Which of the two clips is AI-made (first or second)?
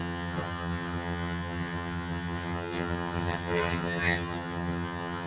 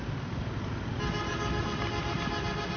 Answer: first